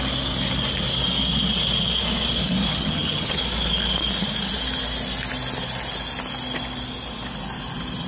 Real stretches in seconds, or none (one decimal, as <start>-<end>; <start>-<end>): 0.0-2.7; 3.4-8.1